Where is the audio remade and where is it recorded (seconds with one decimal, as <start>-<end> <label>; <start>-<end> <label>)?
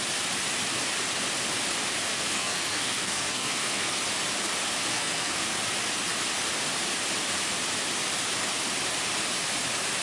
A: 0.0-2.1 recorded; 2.1-4.0 remade; 4.0-4.9 recorded; 4.9-5.6 remade; 5.6-10.0 recorded